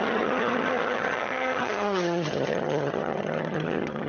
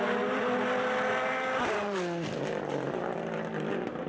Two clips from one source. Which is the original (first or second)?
second